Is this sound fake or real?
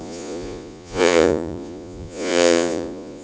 fake